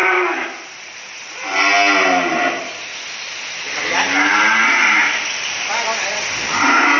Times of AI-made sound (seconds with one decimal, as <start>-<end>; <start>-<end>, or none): 0.0-1.0